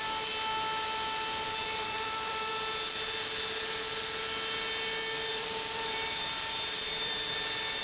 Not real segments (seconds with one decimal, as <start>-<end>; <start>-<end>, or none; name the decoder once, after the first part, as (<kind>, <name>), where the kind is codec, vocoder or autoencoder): 1.6-2.5 (vocoder, BigVGAN v2); 5.3-7.8